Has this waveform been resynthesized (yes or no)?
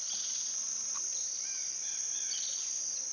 no